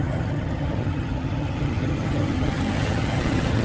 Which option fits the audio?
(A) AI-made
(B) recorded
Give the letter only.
A